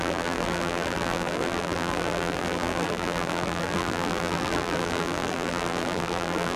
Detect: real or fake fake